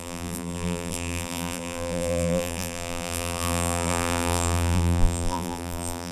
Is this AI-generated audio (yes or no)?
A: yes